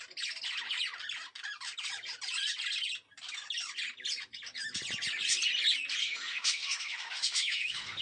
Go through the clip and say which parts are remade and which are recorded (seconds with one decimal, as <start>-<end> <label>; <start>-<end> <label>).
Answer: 0.0-6.0 recorded; 6.0-8.0 remade